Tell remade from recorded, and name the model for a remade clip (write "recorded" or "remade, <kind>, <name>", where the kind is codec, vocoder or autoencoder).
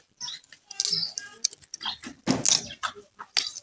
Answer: recorded